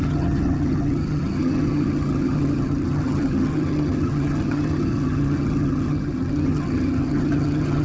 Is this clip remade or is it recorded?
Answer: remade